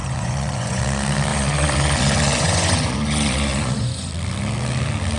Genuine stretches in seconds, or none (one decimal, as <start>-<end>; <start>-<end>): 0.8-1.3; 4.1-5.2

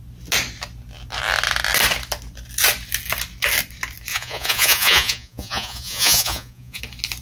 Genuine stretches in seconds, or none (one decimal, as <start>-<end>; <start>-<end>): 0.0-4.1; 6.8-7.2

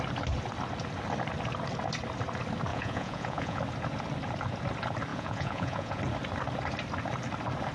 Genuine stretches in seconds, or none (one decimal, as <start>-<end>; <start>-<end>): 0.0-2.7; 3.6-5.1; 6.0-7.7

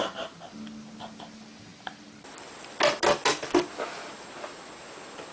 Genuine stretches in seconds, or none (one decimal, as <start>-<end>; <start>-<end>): 0.0-5.3

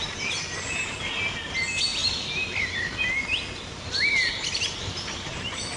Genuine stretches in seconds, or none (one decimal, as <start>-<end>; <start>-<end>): 0.0-5.8